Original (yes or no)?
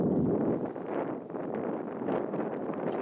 yes